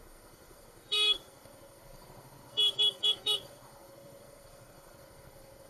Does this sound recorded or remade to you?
remade